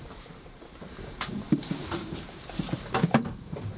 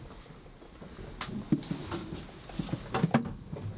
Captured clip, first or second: second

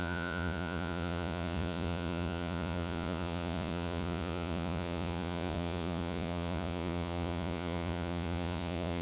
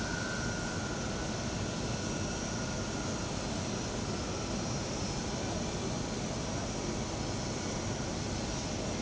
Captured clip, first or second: second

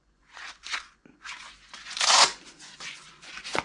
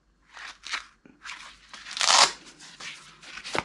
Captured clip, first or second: second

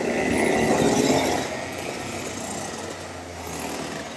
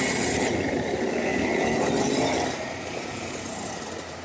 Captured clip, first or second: first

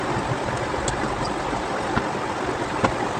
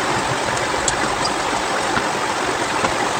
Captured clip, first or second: first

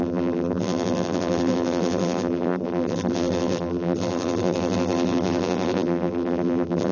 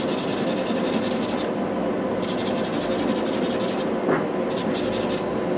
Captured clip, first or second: second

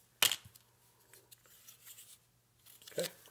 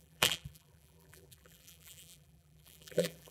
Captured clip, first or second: first